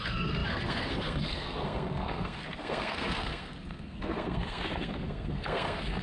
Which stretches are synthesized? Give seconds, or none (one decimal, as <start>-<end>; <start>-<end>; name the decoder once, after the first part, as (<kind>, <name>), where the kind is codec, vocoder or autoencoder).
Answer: 0.0-6.0 (codec, SNAC)